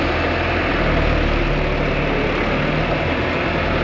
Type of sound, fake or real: real